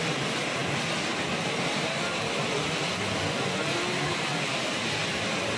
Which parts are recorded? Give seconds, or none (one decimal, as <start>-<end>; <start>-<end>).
0.0-5.6